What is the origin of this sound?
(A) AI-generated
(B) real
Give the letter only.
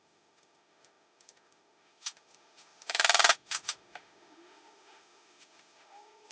A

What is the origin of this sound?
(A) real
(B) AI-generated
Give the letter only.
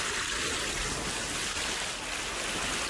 A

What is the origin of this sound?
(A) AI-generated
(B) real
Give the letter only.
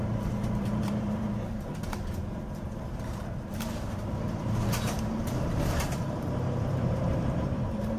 A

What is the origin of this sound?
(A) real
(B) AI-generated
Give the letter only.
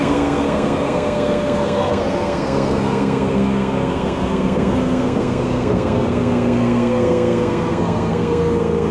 B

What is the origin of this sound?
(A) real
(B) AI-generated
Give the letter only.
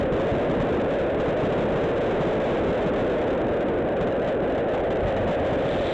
A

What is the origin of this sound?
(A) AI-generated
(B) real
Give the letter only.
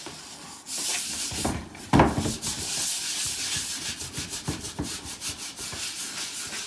B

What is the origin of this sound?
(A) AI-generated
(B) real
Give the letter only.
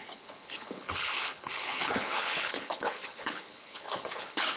A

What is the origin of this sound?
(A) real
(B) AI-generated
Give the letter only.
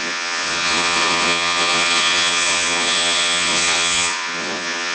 B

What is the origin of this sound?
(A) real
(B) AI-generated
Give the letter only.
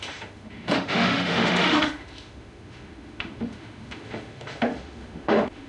B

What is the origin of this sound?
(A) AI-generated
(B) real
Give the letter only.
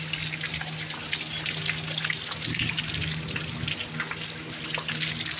B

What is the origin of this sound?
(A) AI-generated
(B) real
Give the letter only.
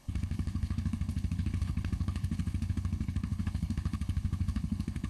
A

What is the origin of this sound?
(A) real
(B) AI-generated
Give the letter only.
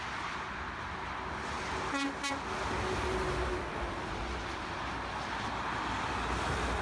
A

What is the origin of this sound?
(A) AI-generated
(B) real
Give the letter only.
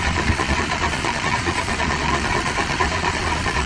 A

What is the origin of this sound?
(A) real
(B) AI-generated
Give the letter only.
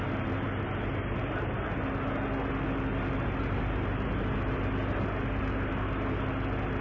A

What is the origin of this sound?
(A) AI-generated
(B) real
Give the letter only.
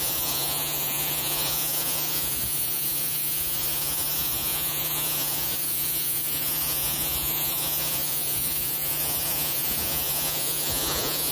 A